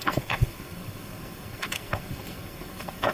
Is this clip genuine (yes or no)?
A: no